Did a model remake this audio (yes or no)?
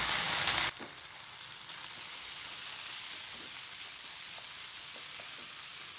no